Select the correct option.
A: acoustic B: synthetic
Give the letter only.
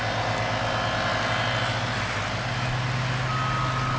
A